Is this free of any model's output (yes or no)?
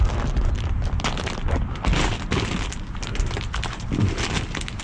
yes